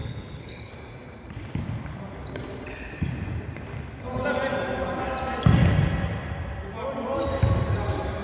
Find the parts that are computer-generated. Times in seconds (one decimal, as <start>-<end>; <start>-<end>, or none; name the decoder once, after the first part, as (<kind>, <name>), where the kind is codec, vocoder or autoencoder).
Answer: 0.0-0.7 (codec, HILCodec)